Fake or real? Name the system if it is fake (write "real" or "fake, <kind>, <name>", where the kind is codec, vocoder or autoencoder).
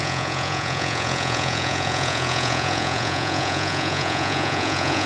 fake, vocoder, Vocos